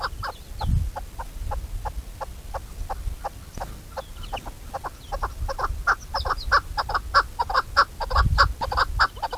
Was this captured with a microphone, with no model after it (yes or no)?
yes